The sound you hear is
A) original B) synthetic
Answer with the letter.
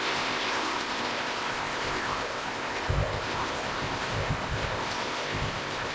B